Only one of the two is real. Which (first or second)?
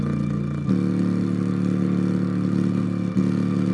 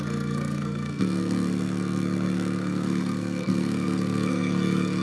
first